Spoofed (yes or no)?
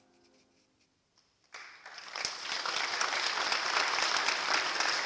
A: no